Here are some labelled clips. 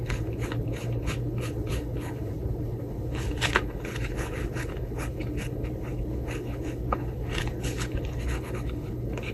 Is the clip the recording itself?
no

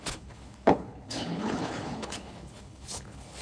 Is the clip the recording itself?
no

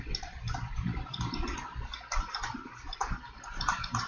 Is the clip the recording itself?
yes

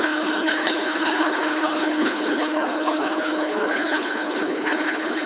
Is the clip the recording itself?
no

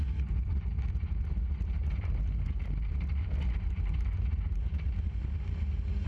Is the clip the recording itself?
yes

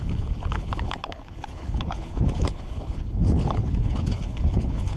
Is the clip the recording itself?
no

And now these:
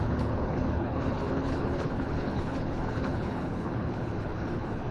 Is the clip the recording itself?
no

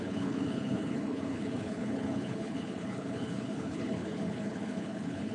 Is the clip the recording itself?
no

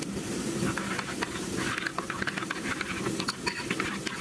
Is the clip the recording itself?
yes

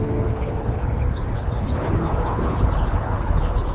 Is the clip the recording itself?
no